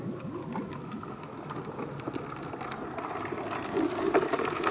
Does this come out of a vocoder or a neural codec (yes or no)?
no